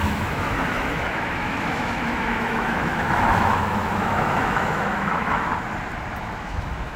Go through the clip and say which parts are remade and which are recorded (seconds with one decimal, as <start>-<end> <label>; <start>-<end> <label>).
0.0-5.5 remade; 5.5-6.4 recorded; 6.4-7.0 remade